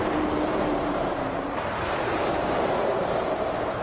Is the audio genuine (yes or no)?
no